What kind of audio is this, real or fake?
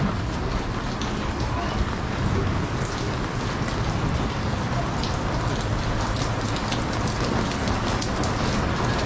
real